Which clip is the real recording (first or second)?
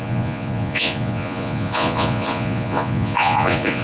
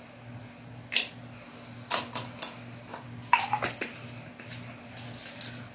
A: second